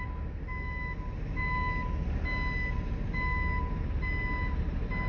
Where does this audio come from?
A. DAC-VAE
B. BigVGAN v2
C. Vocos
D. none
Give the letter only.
D